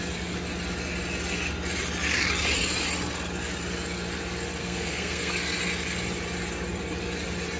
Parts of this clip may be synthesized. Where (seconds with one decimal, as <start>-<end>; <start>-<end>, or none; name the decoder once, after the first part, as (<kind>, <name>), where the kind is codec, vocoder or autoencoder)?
4.6-5.3 (codec, SNAC)